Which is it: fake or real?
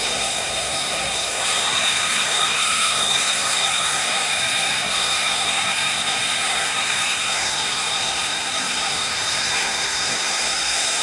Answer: fake